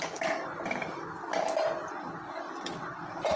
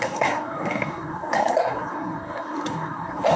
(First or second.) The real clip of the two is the first